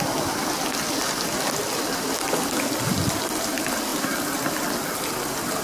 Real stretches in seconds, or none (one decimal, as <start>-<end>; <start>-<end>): 0.0-5.6